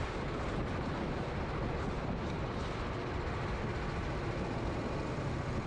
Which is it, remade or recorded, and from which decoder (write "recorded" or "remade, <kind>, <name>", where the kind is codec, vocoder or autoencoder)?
recorded